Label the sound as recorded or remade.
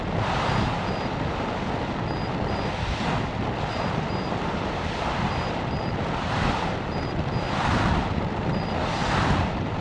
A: remade